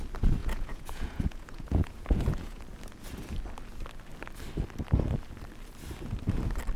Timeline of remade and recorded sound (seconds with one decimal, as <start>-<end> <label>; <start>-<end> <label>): 0.0-0.4 recorded; 0.4-2.6 remade; 2.6-6.8 recorded